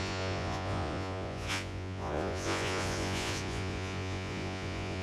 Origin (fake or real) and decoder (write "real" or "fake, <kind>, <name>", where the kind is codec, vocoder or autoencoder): fake, vocoder, Vocos